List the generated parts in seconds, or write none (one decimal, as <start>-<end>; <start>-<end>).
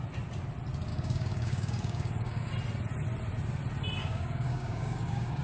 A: 0.9-2.5; 4.0-5.4